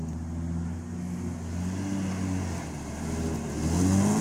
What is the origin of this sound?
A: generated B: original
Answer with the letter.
B